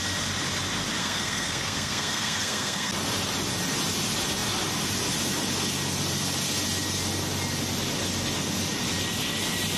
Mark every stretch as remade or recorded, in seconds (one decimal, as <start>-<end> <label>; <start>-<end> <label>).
0.0-1.0 recorded; 1.0-2.9 remade; 2.9-9.8 recorded